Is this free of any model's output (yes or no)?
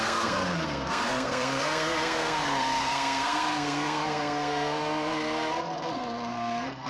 no